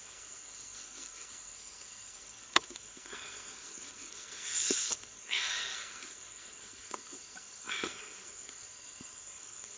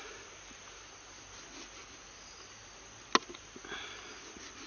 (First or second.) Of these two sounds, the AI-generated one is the first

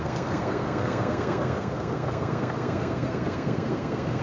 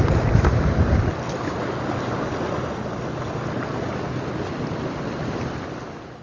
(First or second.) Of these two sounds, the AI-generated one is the first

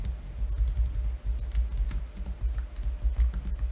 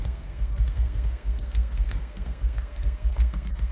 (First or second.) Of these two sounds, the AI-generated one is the second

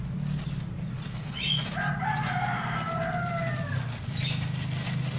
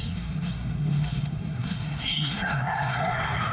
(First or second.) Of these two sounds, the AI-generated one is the second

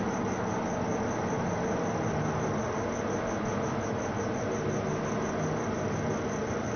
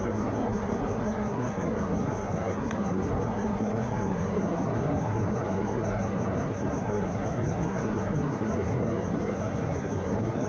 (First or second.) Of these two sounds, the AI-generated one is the second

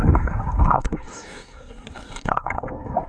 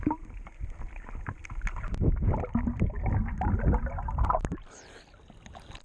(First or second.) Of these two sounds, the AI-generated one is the first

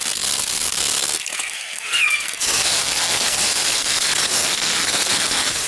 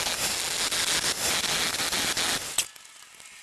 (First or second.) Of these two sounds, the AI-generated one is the first